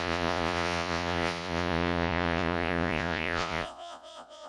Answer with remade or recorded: remade